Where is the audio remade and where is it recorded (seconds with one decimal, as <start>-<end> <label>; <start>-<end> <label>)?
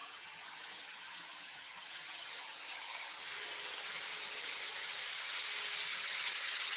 0.0-3.2 remade; 3.2-4.2 recorded; 4.2-4.9 remade; 4.9-5.9 recorded; 5.9-6.8 remade